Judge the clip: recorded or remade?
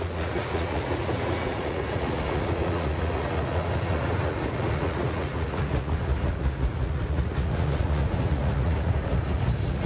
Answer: remade